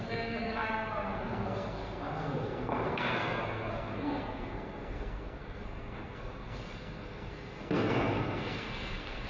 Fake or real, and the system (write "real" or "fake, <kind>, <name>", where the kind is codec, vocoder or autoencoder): fake, codec, SNAC